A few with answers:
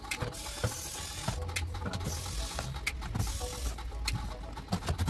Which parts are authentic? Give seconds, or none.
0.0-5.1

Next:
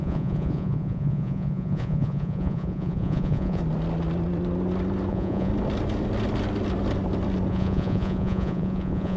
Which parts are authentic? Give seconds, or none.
3.6-5.1; 5.5-7.5

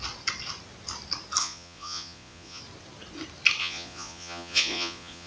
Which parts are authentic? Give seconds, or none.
0.0-1.4; 2.6-3.6

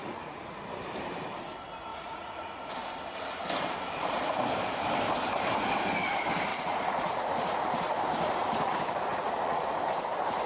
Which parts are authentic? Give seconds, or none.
0.7-1.9; 2.7-6.5; 7.6-9.1; 9.6-10.5